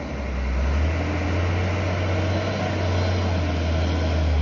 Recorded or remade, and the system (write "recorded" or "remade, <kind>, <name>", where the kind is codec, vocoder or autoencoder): recorded